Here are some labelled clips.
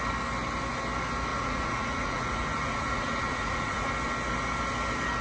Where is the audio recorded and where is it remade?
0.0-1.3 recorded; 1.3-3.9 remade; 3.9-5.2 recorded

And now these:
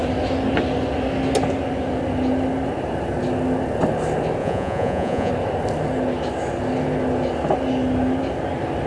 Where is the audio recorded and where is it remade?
0.0-4.4 recorded; 4.4-5.3 remade; 5.3-8.9 recorded

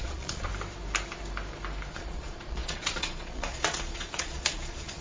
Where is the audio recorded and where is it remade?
0.0-0.5 remade; 0.5-1.9 recorded; 1.9-5.0 remade

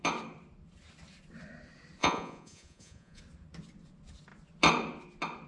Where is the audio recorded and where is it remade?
0.0-2.0 recorded; 2.0-3.2 remade; 3.2-5.5 recorded

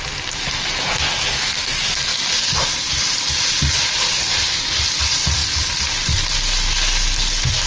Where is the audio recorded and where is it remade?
0.0-7.7 recorded

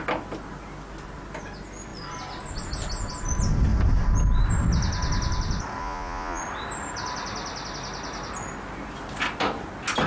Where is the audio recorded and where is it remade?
0.0-5.8 recorded; 5.8-6.4 remade; 6.4-10.1 recorded

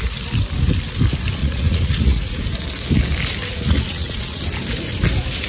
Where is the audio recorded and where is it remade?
0.0-1.4 recorded; 1.4-2.4 remade; 2.4-3.5 recorded; 3.5-4.4 remade; 4.4-5.5 recorded